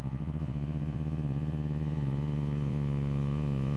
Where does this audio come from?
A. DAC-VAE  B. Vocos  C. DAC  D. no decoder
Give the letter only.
B